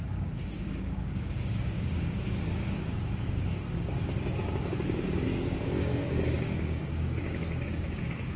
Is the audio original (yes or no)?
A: no